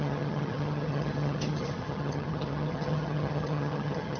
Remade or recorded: remade